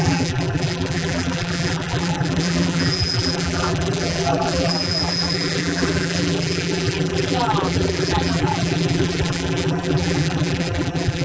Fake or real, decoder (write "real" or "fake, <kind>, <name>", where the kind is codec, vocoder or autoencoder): fake, vocoder, BigVGAN v2